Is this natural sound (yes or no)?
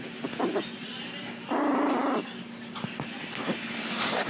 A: yes